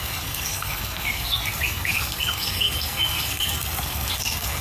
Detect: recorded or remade remade